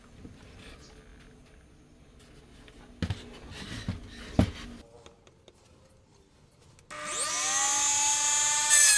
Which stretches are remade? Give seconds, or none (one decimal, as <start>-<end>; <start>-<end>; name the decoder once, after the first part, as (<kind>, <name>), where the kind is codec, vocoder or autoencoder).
none